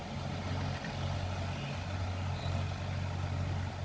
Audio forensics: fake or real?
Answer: real